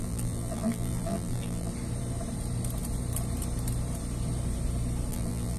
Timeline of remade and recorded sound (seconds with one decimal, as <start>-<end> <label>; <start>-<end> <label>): 0.0-1.7 remade; 1.7-5.1 recorded; 5.1-5.6 remade